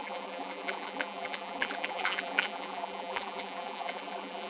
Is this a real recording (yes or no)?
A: no